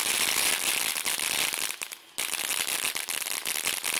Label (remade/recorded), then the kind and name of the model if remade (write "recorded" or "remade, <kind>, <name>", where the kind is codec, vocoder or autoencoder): recorded